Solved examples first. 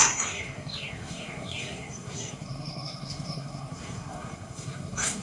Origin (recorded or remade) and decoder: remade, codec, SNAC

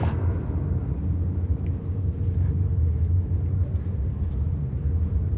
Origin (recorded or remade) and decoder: recorded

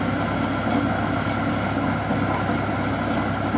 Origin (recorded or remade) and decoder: recorded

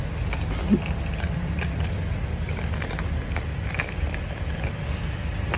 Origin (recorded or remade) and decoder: recorded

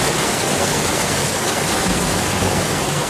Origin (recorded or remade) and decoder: remade, codec, SNAC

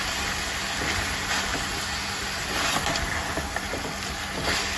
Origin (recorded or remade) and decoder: recorded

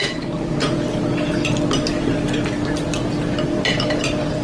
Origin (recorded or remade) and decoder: recorded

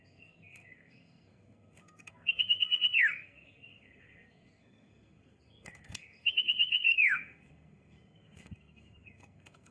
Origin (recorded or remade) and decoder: remade, codec, SNAC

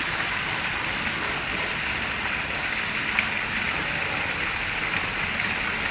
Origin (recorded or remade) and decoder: recorded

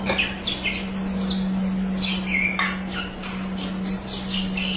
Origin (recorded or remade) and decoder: recorded